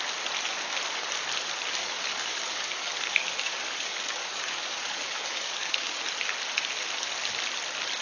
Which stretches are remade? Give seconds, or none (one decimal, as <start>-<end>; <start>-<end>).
1.8-6.0